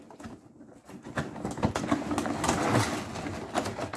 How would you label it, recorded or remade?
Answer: recorded